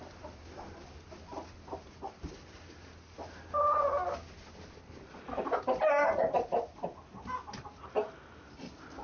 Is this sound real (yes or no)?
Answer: yes